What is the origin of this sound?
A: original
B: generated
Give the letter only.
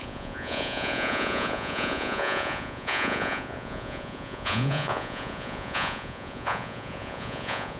B